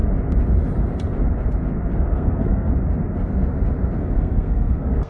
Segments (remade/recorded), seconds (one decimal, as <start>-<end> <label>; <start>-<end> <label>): 0.0-1.9 recorded; 1.9-2.7 remade; 2.7-4.0 recorded; 4.0-5.1 remade